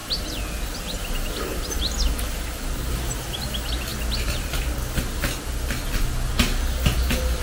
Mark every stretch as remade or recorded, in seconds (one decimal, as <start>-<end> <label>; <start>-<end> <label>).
0.0-7.4 recorded